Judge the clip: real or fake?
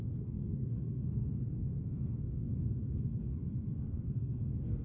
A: fake